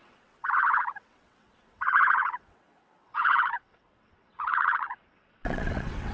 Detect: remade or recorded remade